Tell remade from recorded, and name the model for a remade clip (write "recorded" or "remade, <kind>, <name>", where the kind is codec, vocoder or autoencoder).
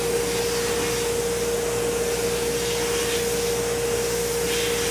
recorded